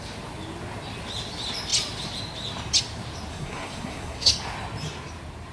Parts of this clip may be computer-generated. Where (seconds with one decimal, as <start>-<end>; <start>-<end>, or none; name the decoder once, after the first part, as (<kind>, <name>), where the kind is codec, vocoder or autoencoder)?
3.3-4.3 (codec, SNAC)